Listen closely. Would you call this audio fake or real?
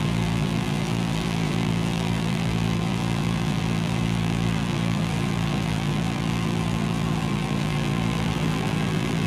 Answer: fake